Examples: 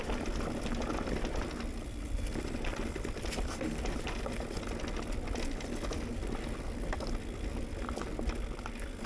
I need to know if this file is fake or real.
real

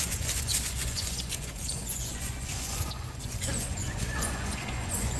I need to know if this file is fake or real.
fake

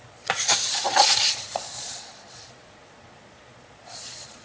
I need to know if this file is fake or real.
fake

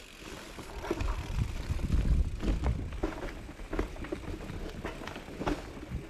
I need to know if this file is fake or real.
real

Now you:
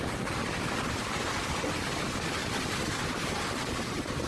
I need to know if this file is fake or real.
real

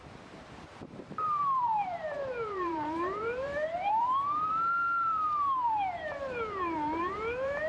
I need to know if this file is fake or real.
fake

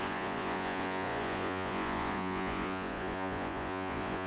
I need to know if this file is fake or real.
fake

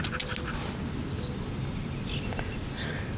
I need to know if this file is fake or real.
real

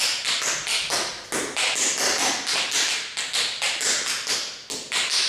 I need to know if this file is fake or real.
real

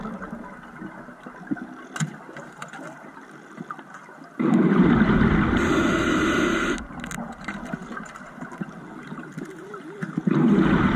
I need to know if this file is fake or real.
real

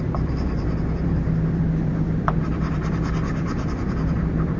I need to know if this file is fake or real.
fake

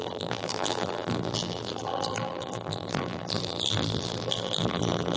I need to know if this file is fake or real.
fake